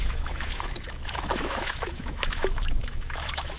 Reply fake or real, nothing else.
fake